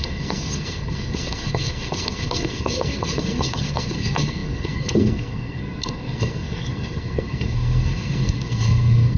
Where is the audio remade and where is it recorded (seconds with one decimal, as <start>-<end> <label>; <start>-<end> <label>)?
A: 0.0-9.2 remade